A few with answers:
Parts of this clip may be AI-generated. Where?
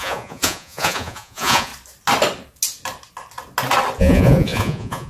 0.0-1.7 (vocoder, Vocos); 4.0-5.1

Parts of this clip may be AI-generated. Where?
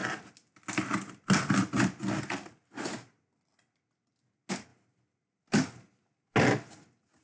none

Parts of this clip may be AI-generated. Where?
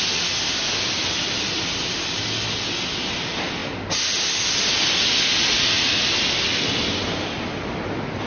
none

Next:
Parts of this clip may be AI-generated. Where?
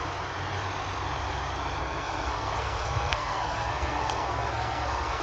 1.8-5.2 (codec, SNAC)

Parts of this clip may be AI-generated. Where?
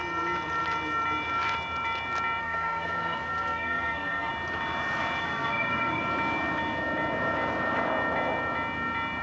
2.4-4.3 (codec, SNAC); 5.2-6.0